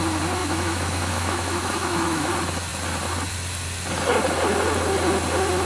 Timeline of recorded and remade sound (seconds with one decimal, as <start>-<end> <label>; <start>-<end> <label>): 0.0-0.4 recorded; 0.4-2.3 remade; 2.3-5.6 recorded

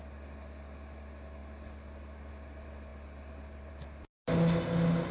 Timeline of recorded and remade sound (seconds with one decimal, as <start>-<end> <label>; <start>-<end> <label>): 0.0-5.1 recorded

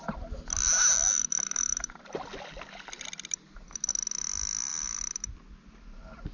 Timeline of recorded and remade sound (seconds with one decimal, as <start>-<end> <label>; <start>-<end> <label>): 0.0-6.3 recorded

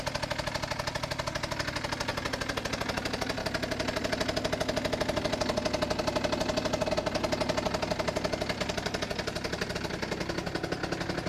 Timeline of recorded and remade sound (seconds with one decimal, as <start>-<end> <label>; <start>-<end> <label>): 0.0-11.3 recorded

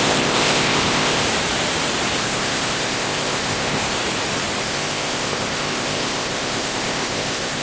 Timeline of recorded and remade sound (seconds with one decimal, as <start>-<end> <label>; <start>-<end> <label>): 0.0-1.2 remade; 1.2-2.2 recorded; 2.2-4.0 remade; 4.0-4.6 recorded; 4.6-7.6 remade

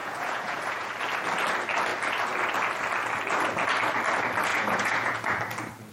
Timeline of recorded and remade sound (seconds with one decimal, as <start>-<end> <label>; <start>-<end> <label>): 0.0-0.9 remade; 0.9-4.5 recorded; 4.5-5.2 remade; 5.2-5.9 recorded

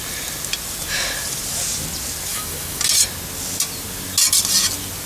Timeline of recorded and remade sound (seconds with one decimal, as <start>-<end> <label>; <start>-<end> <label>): 0.0-2.3 recorded; 2.3-2.8 remade; 2.8-5.1 recorded